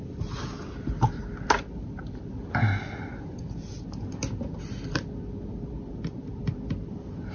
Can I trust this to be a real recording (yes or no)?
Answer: yes